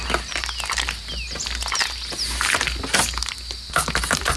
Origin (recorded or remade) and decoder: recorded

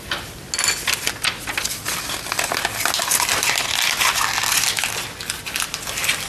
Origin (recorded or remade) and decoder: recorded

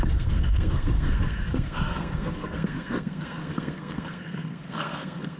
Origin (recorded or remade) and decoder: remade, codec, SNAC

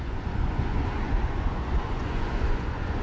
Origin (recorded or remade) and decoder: remade, vocoder, Vocos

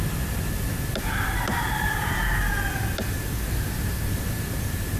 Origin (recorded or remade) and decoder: recorded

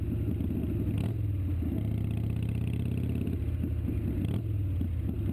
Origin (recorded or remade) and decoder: recorded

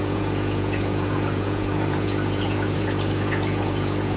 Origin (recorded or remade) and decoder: remade, vocoder, Vocos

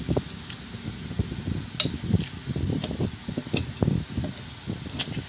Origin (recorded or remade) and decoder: recorded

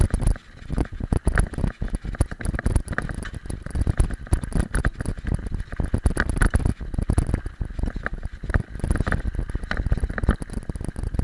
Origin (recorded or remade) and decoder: recorded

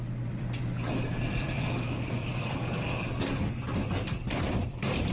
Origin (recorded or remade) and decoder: remade, vocoder, BigVGAN v2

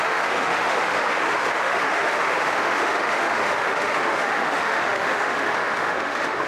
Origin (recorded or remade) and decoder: remade, autoencoder, DAC-VAE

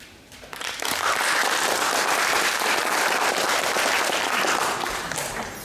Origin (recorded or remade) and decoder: remade, vocoder, BigVGAN v2